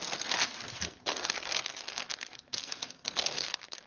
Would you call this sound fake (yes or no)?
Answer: yes